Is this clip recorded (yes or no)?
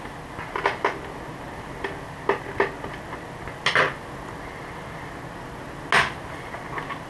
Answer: yes